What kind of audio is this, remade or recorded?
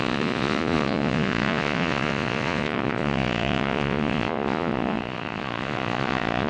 remade